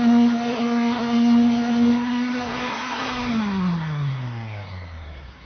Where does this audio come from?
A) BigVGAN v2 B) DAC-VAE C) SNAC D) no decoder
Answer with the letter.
C